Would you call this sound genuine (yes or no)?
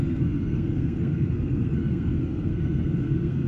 no